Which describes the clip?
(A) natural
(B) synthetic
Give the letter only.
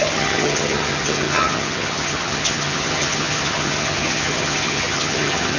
B